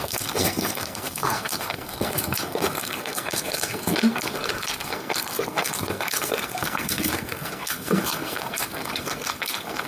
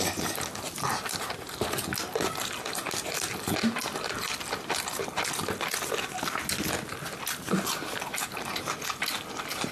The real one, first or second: second